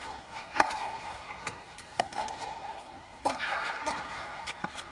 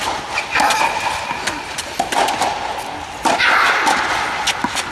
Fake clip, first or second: first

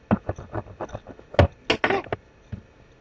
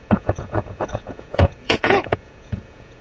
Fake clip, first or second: second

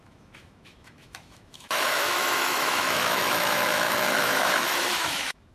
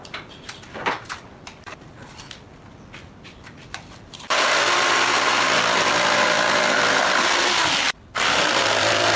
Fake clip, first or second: first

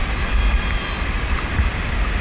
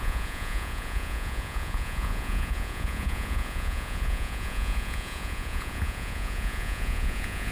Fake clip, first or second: second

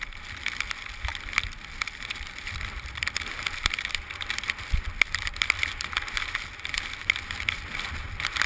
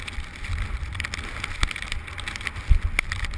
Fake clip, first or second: first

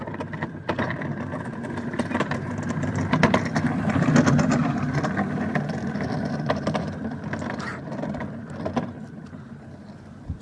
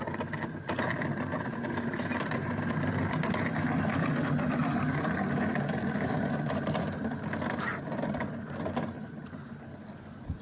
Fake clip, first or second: first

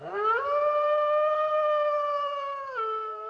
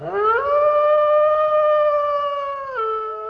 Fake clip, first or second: first